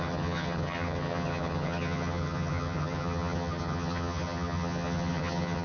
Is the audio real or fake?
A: fake